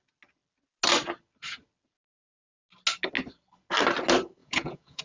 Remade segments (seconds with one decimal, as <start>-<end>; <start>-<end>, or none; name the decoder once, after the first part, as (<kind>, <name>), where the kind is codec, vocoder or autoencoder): 4.4-5.0 (vocoder, Vocos)